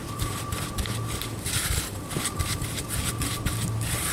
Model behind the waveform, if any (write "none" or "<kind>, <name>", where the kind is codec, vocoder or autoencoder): none